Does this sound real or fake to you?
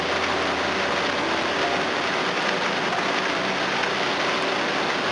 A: real